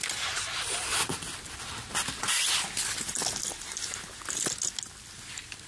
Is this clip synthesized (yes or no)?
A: no